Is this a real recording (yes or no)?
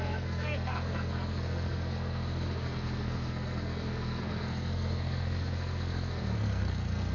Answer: no